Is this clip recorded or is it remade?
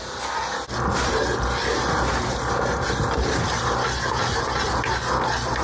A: recorded